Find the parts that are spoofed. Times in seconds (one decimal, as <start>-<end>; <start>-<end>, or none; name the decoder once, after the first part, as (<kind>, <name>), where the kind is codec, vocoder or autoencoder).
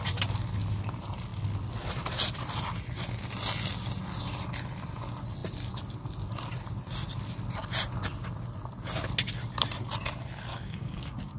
10.5-11.4 (codec, DAC)